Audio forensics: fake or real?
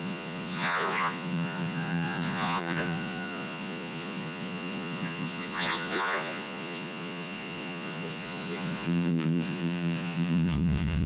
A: fake